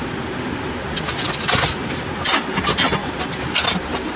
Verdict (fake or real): real